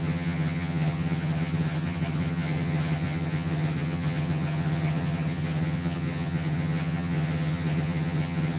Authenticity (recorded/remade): remade